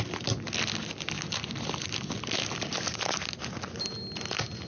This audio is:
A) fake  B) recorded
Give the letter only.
B